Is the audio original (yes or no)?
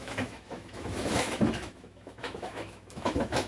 no